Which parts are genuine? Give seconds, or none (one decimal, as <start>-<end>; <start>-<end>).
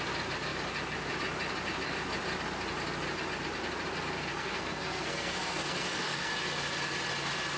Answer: 0.0-4.3; 6.3-7.6